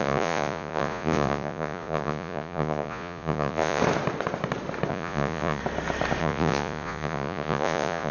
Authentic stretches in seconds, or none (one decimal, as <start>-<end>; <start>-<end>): 3.8-4.9; 5.6-6.2